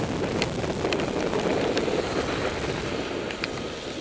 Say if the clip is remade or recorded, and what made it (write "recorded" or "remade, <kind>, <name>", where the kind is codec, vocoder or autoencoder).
recorded